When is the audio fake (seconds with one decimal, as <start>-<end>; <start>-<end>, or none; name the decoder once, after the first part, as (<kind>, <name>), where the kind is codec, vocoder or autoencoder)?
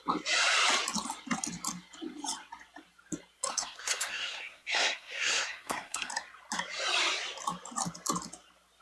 3.5-6.1 (codec, SNAC)